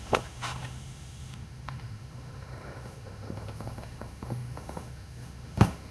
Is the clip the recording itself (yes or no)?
no